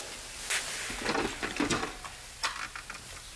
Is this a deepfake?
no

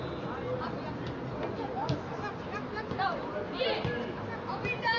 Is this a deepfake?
no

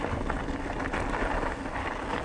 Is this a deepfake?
no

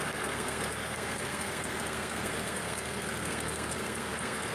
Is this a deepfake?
yes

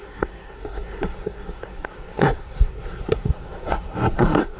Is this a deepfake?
yes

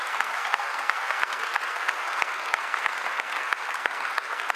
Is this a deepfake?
yes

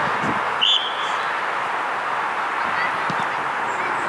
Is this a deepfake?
no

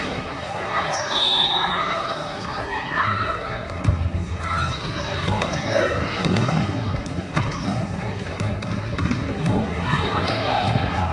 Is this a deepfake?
yes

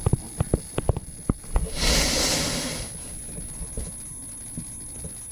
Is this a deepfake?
no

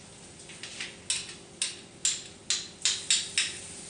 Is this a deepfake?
no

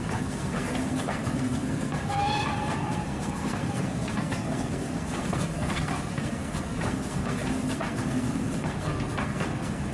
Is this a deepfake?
yes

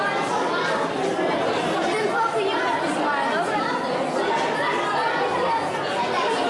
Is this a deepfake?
no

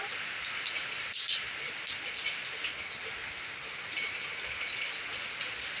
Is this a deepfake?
no